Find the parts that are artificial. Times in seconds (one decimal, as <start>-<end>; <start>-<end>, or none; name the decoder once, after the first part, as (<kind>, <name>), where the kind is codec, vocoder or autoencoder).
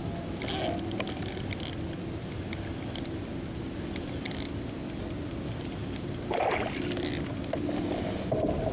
none